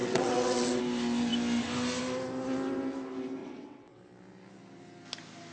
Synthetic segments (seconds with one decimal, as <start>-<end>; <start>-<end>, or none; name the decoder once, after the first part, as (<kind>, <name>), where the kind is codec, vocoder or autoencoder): 0.0-0.8 (vocoder, WaveNeXt); 3.4-4.0